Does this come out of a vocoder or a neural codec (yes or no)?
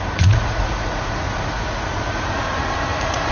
yes